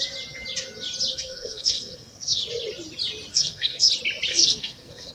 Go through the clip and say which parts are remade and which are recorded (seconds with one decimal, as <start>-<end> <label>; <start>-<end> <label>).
0.0-1.1 recorded; 1.1-2.4 remade; 2.4-3.3 recorded; 3.3-3.9 remade; 3.9-4.3 recorded; 4.3-5.1 remade